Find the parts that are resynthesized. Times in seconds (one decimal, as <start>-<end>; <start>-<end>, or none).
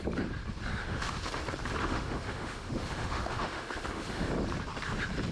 0.8-1.4; 1.8-4.3